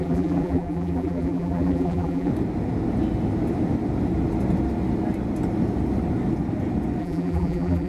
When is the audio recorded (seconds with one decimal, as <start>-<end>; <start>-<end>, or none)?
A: 2.3-7.0